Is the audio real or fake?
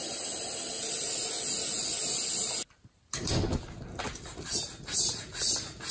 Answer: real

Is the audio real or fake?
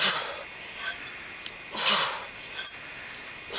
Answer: real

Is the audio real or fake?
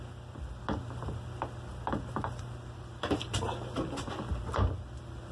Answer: real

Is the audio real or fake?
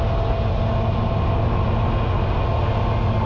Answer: real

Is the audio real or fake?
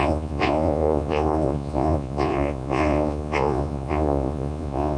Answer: fake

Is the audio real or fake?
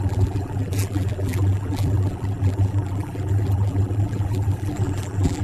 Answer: fake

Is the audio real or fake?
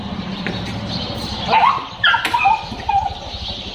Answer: real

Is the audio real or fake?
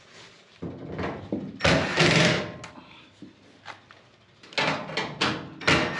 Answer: real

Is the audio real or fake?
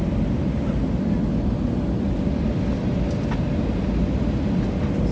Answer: real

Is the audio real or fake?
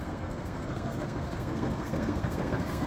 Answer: fake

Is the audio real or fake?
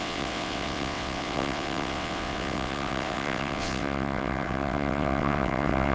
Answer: fake